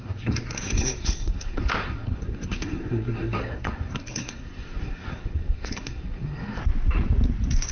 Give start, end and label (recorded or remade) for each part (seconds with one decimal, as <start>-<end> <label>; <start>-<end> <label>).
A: 0.0-6.6 remade; 6.6-7.7 recorded